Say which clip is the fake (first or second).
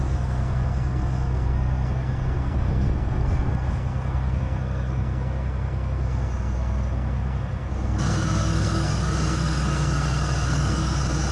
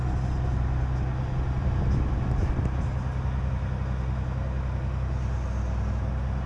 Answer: first